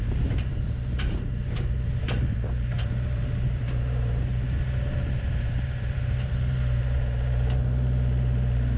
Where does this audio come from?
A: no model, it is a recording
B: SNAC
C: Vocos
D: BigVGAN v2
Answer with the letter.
D